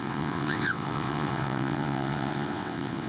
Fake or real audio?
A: fake